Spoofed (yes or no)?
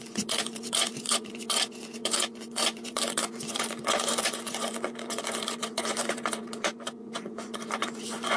yes